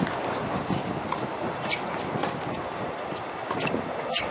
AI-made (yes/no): no